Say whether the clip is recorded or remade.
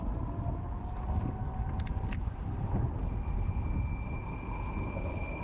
recorded